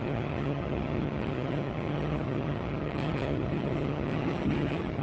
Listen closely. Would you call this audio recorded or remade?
remade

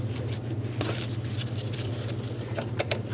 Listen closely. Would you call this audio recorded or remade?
recorded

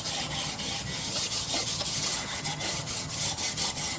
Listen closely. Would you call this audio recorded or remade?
remade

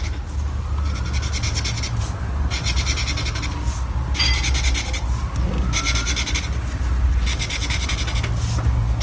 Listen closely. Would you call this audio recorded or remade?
recorded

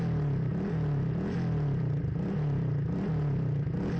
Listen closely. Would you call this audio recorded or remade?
recorded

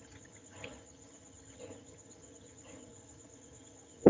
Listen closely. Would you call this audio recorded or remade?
remade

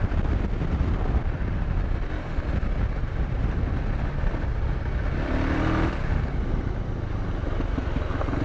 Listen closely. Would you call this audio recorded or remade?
recorded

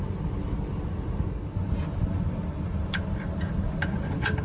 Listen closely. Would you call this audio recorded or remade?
recorded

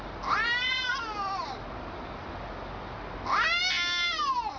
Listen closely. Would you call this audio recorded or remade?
recorded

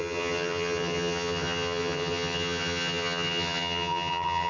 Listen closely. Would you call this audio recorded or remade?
remade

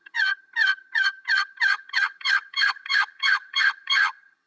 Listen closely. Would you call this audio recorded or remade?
remade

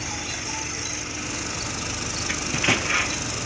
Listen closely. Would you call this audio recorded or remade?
recorded